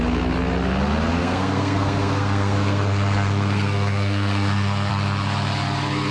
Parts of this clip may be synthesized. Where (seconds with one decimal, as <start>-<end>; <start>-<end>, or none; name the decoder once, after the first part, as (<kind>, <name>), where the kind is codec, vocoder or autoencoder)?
1.2-4.9 (codec, SNAC)